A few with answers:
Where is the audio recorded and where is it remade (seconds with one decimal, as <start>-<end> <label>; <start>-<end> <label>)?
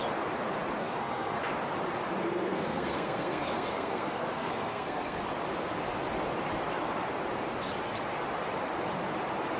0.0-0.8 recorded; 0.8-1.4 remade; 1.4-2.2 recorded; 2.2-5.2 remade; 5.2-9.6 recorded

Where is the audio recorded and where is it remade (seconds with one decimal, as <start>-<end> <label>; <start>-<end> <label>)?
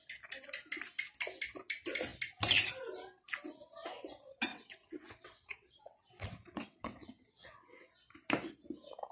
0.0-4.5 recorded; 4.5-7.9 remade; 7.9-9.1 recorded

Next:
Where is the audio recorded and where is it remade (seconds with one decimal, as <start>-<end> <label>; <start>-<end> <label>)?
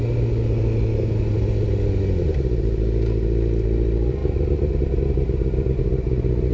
0.0-6.5 recorded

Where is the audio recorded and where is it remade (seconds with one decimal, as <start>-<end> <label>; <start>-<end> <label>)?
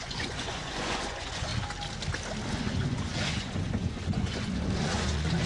0.0-1.5 remade; 1.5-2.5 recorded; 2.5-5.5 remade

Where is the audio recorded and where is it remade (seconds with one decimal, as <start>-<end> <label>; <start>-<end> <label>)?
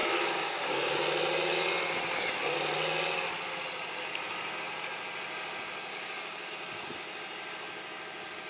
0.0-1.0 remade; 1.0-5.9 recorded; 5.9-6.5 remade; 6.5-8.5 recorded